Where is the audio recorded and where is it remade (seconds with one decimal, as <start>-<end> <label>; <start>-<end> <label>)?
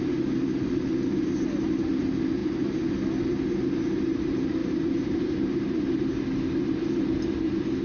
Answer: 0.0-4.6 recorded; 4.6-6.2 remade; 6.2-7.8 recorded